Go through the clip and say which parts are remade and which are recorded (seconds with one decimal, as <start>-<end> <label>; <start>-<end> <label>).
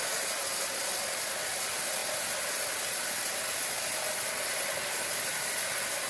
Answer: 0.0-6.1 recorded